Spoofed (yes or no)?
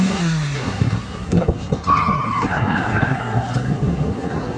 yes